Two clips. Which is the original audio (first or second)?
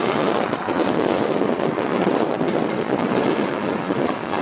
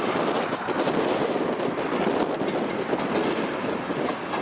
second